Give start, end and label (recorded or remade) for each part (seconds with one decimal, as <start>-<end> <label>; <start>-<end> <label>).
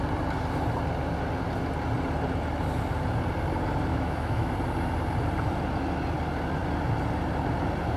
0.0-3.9 recorded; 3.9-4.5 remade; 4.5-8.0 recorded